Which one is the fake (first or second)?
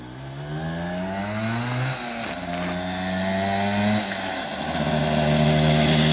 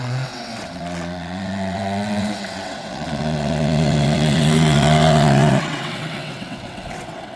second